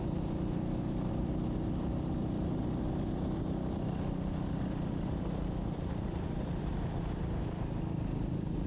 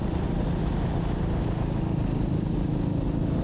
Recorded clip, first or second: second